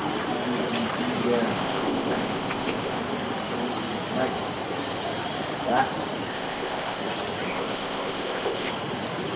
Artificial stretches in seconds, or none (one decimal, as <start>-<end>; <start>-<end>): 1.5-3.0; 6.3-7.0; 7.5-8.7